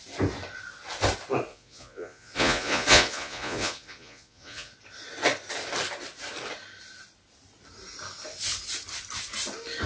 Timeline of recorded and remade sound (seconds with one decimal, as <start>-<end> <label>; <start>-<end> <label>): 0.0-1.5 recorded; 1.5-4.7 remade; 4.7-9.9 recorded